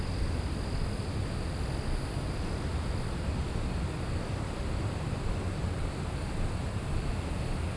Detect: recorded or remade recorded